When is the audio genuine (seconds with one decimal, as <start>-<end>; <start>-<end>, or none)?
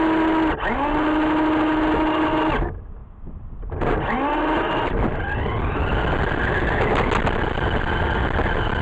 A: 0.0-8.8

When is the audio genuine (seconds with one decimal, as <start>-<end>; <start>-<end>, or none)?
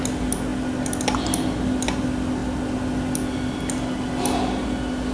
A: 0.0-5.1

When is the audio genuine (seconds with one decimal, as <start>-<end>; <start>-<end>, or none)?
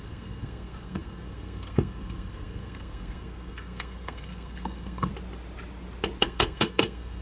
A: 5.1-6.2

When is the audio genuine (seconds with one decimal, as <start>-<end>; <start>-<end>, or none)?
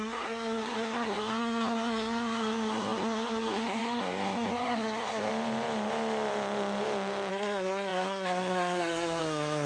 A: 5.3-7.3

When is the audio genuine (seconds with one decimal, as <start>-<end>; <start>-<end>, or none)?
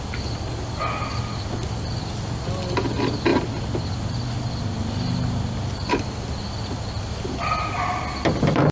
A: 0.0-8.7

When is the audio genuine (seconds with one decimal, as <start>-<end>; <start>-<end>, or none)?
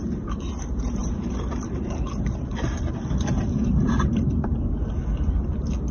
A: 4.8-5.9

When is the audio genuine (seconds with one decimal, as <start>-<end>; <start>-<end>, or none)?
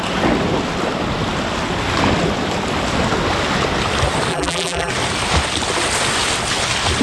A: 0.0-4.3; 4.9-7.0